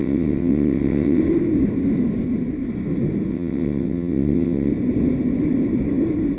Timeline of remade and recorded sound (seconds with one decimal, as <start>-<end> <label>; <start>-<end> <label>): 0.0-1.2 remade; 1.2-3.3 recorded; 3.3-4.7 remade; 4.7-6.4 recorded